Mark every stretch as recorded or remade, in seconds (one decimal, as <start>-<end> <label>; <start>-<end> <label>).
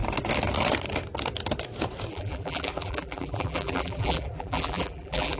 0.0-2.1 recorded; 2.1-5.4 remade